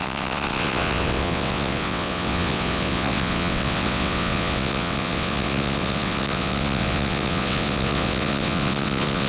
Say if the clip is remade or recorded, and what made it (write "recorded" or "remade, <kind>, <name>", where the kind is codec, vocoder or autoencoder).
remade, vocoder, WaveNeXt